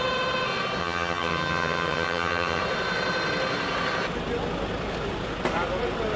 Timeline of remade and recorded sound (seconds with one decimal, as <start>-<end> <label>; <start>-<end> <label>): 0.0-0.8 recorded; 0.8-2.6 remade; 2.6-6.2 recorded